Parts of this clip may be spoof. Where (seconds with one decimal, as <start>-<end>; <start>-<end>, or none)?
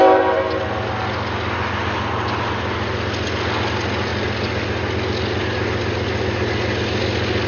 none